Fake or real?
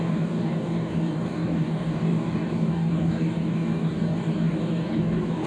fake